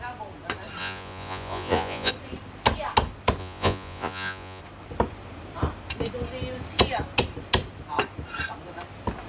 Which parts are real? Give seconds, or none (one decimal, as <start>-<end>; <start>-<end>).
0.0-0.8; 2.1-3.4; 4.6-9.3